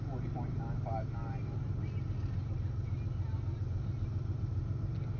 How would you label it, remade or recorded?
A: recorded